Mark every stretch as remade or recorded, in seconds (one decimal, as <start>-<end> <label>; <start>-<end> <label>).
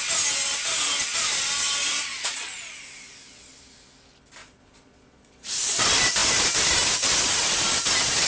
0.0-2.1 recorded; 2.1-2.7 remade; 2.7-4.4 recorded; 4.4-5.8 remade; 5.8-8.3 recorded